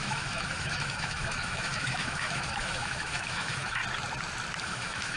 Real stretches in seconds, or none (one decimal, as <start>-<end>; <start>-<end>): 3.8-4.6